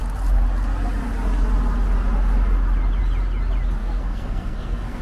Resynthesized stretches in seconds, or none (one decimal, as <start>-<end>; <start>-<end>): 3.8-5.0